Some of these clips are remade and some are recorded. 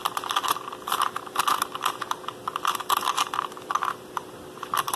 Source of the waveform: recorded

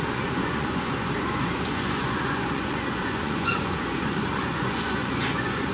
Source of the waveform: remade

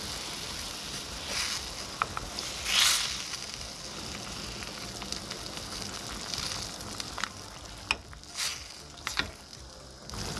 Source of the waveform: recorded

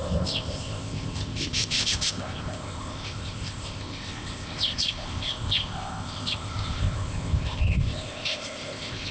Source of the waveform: remade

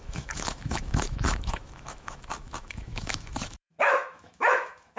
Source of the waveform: remade